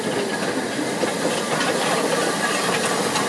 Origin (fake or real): real